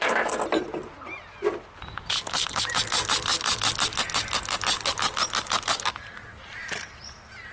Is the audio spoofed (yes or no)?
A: no